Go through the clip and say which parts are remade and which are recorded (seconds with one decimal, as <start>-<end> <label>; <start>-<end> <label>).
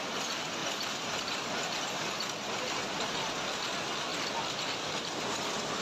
0.0-4.1 recorded; 4.1-5.0 remade; 5.0-5.8 recorded